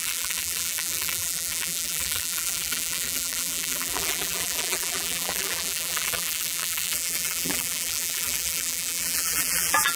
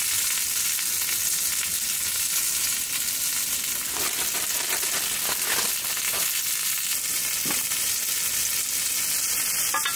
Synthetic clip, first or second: first